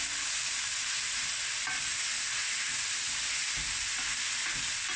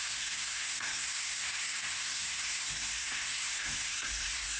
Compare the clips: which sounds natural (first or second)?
first